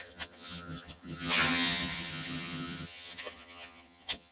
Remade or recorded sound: remade